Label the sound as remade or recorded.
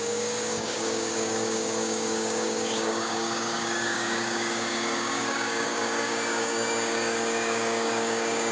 remade